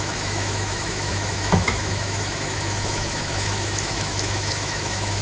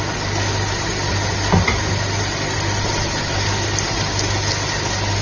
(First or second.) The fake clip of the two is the first